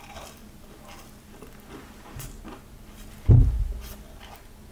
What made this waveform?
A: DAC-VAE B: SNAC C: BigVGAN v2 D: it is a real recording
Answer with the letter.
D